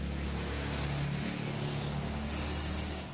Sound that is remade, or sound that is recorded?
recorded